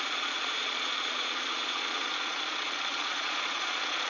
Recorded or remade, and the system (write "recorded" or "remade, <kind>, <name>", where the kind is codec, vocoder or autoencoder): remade, vocoder, Vocos